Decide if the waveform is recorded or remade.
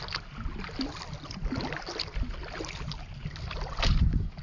recorded